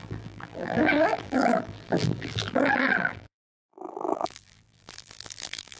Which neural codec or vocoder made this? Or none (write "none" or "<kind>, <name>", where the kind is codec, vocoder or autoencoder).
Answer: vocoder, BigVGAN v2